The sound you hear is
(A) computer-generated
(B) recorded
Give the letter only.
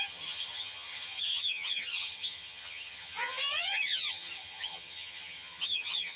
A